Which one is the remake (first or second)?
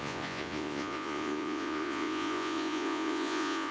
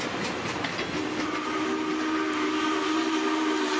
first